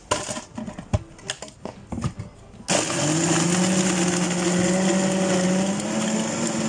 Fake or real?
real